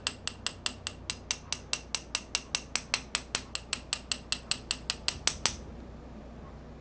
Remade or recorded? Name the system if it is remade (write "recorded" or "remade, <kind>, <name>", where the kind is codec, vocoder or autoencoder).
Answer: recorded